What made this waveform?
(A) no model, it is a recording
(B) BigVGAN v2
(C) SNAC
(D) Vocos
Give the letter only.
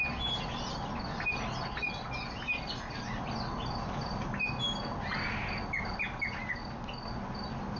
A